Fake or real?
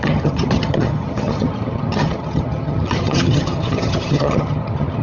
fake